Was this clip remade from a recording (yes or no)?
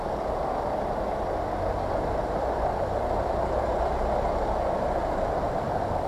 no